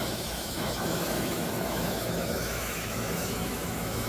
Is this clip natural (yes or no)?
no